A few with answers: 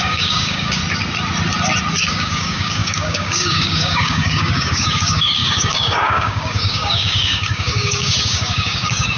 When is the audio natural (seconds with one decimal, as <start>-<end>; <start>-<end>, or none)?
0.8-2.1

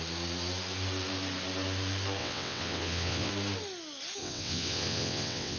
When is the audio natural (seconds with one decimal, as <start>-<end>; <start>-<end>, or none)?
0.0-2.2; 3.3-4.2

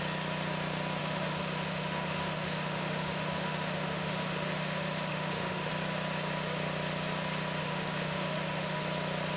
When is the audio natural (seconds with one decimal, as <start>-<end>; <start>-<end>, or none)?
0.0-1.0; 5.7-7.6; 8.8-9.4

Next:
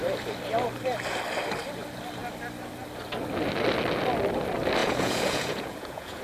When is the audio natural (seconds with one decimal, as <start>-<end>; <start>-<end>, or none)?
0.0-4.8